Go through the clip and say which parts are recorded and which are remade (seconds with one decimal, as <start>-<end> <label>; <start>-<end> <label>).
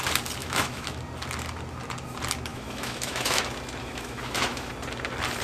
0.0-0.4 recorded; 0.4-1.0 remade; 1.0-2.5 recorded; 2.5-3.4 remade; 3.4-3.8 recorded; 3.8-4.7 remade; 4.7-5.4 recorded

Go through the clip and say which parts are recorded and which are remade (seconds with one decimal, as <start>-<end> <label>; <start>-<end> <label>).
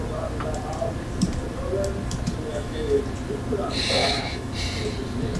0.0-2.5 recorded; 2.5-3.0 remade; 3.0-4.0 recorded; 4.0-4.5 remade; 4.5-5.4 recorded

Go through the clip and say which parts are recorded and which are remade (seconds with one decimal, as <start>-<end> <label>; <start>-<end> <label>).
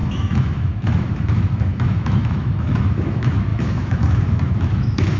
0.0-5.2 remade